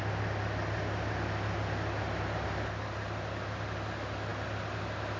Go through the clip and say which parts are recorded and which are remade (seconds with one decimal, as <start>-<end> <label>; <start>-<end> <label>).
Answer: 0.0-5.2 recorded